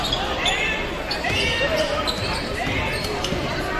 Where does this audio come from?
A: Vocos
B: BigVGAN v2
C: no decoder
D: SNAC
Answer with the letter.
C